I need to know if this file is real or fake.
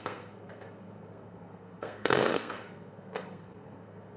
fake